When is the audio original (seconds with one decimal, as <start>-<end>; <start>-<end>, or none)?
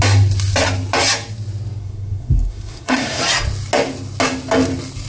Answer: 0.0-1.8; 3.2-5.1